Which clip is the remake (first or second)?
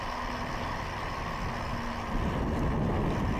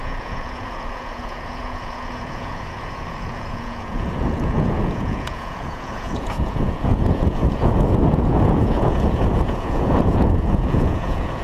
second